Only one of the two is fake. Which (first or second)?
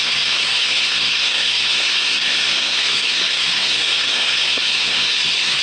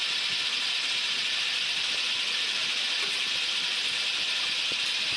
first